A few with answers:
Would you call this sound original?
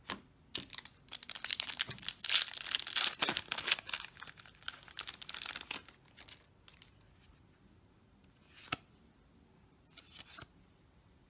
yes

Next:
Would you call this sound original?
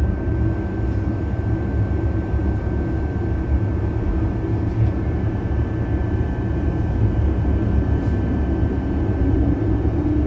yes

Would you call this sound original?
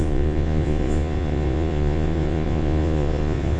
no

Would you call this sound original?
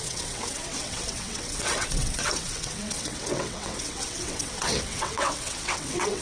no